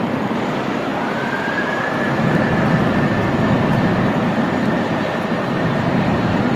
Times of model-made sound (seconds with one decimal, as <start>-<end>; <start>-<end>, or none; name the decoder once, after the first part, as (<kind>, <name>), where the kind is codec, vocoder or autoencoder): 0.0-3.2 (vocoder, BigVGAN v2); 3.9-6.6